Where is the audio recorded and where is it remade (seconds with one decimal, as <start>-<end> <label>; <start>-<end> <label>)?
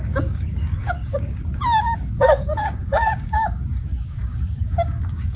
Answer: 0.0-5.4 remade